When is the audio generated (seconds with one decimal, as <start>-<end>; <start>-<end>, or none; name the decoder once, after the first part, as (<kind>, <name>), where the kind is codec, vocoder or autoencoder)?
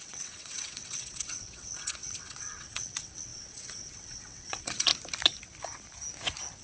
0.0-4.9 (vocoder, WaveNeXt)